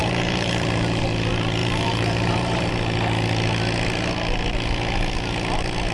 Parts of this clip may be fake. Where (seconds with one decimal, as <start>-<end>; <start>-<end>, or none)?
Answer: 0.0-1.0; 1.6-2.7